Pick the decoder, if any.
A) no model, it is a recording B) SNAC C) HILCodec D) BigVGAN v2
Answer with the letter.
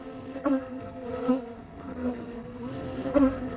B